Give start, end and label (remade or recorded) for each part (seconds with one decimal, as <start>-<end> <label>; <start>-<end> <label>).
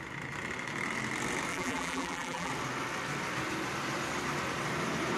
0.0-1.5 recorded; 1.5-2.5 remade; 2.5-5.2 recorded